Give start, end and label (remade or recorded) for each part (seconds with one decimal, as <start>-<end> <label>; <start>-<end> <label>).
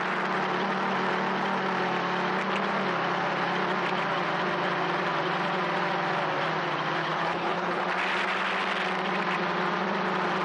0.0-7.0 recorded; 7.0-7.8 remade; 7.8-10.4 recorded